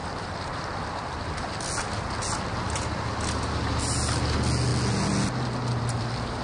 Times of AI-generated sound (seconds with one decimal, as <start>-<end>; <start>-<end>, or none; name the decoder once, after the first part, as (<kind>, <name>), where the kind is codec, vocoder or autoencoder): none